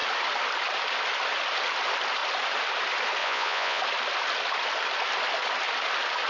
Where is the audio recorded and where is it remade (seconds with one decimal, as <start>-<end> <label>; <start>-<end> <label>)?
0.0-3.2 recorded; 3.2-3.8 remade; 3.8-6.3 recorded